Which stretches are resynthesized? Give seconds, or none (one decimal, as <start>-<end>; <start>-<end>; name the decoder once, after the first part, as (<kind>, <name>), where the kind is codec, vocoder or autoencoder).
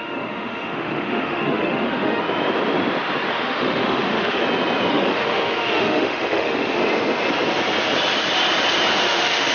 0.0-2.2 (autoencoder, DAC-VAE); 3.3-4.4; 4.9-6.8; 9.0-9.5